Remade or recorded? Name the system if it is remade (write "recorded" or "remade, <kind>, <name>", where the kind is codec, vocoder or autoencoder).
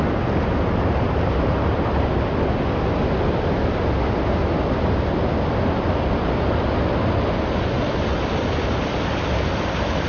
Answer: recorded